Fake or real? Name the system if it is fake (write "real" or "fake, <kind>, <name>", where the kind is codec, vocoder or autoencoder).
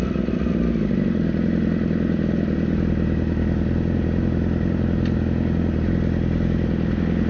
real